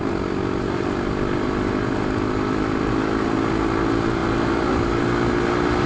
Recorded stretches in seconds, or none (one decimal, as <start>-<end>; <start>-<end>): 0.0-5.9